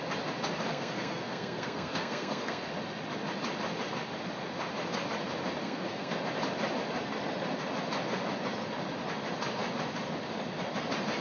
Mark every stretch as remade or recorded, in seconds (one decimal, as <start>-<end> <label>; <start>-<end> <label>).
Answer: 0.0-0.7 recorded; 0.7-2.7 remade; 2.7-5.6 recorded; 5.6-6.2 remade; 6.2-11.2 recorded